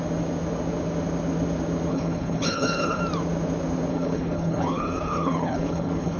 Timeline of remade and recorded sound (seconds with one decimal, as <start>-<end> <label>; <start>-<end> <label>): 0.0-1.9 recorded; 1.9-3.0 remade; 3.0-3.9 recorded; 3.9-6.2 remade